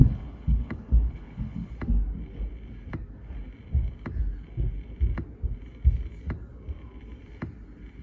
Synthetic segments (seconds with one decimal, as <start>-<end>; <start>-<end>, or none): 0.0-1.7